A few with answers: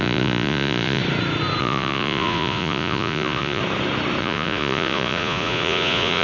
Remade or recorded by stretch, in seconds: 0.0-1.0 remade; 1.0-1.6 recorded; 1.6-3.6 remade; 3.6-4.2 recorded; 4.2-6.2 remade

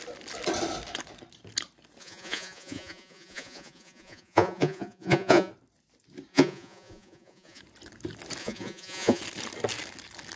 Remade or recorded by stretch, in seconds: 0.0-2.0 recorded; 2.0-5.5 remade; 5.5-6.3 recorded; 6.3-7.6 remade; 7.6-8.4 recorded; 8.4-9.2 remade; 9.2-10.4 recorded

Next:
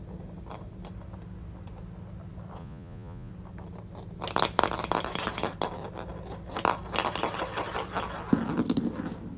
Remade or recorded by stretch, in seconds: 0.0-2.6 recorded; 2.6-3.3 remade; 3.3-9.4 recorded

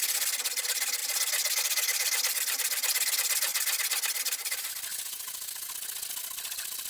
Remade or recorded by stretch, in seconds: 0.0-4.9 recorded; 4.9-5.7 remade; 5.7-6.9 recorded

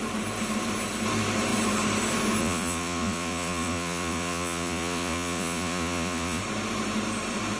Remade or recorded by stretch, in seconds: 0.0-2.4 recorded; 2.4-6.4 remade; 6.4-7.6 recorded